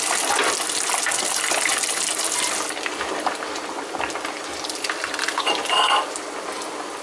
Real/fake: fake